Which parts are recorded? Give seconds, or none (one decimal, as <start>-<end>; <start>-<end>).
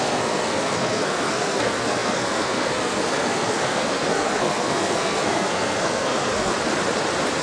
6.5-7.4